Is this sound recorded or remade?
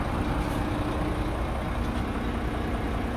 recorded